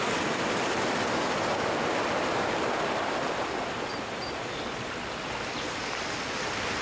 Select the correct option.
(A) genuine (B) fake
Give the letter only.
A